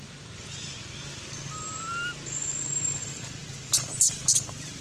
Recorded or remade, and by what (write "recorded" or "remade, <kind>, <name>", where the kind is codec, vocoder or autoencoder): recorded